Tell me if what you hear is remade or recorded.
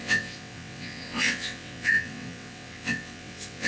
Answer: remade